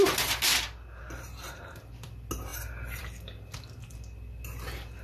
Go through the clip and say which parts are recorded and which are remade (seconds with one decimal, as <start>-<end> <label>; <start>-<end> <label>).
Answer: 0.0-5.0 recorded